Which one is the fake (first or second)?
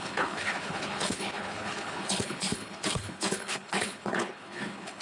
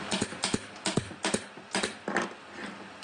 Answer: first